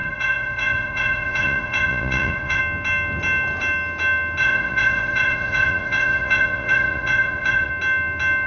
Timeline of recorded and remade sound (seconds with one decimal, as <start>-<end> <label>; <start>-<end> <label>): 0.0-2.6 remade; 2.6-4.4 recorded; 4.4-7.7 remade; 7.7-8.5 recorded